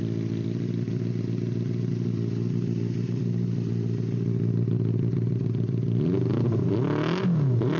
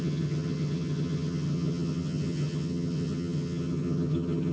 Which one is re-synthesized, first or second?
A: second